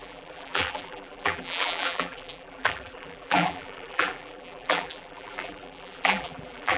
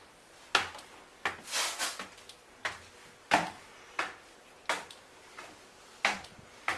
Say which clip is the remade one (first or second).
first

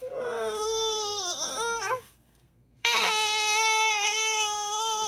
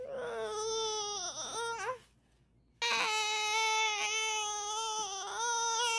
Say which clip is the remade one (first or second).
first